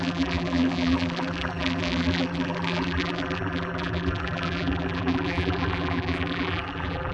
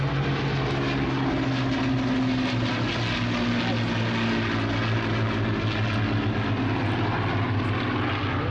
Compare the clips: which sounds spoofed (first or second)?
first